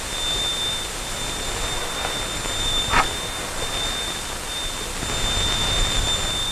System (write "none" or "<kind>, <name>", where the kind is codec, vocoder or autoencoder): none